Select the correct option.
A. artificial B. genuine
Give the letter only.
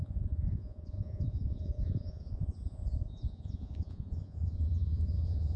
A